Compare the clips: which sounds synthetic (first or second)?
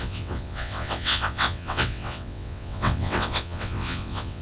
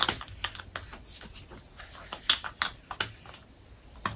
first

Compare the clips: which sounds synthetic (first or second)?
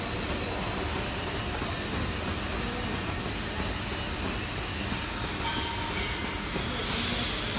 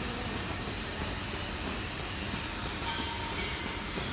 second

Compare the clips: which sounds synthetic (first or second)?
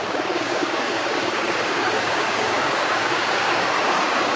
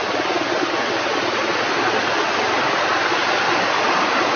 first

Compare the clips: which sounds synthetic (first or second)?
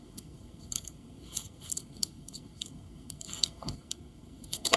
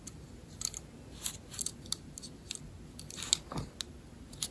first